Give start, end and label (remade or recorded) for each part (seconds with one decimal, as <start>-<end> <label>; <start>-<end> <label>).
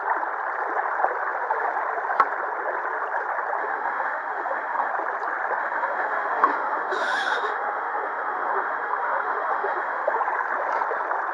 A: 0.0-3.6 recorded; 3.6-4.9 remade; 4.9-5.6 recorded; 5.6-10.2 remade; 10.2-11.3 recorded